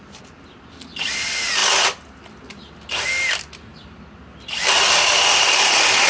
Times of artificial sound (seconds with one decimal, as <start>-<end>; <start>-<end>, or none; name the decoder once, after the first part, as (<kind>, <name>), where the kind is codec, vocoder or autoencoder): none